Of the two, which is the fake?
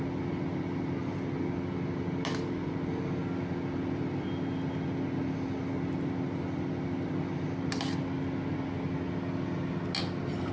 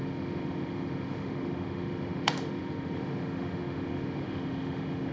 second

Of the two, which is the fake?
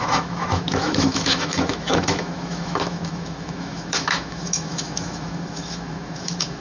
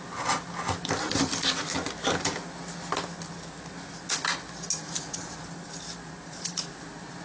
first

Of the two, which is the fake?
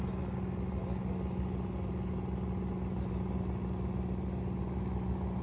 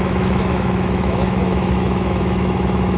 second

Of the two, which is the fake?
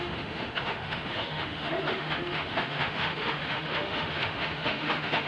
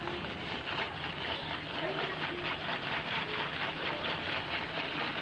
first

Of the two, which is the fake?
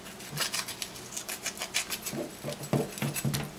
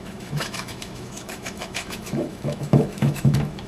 second